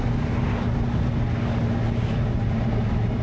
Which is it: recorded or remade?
recorded